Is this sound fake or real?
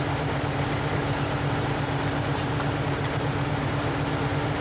fake